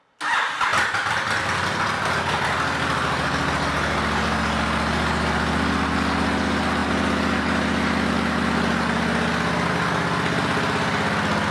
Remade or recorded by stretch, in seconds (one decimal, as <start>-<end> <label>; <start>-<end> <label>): 0.0-11.5 recorded